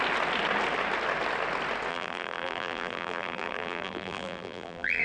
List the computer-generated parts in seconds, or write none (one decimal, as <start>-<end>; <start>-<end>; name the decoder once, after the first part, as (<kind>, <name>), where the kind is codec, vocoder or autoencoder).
1.9-5.0 (vocoder, BigVGAN v2)